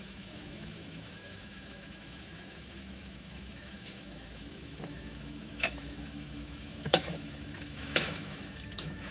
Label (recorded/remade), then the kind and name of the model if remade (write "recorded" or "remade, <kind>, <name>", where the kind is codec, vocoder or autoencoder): remade, autoencoder, DAC-VAE